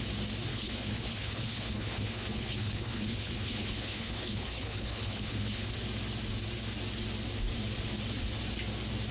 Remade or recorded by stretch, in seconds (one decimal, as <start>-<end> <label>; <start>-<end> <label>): 0.0-0.5 recorded; 0.5-5.7 remade; 5.7-9.1 recorded